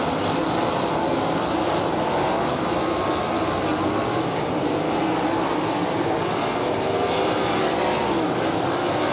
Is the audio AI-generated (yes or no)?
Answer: no